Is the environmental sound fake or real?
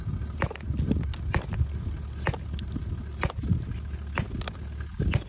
real